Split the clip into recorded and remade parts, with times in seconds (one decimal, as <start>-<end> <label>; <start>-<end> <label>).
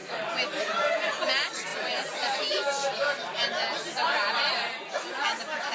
0.0-1.1 remade; 1.1-1.7 recorded; 1.7-2.4 remade; 2.4-4.0 recorded; 4.0-4.9 remade; 4.9-5.7 recorded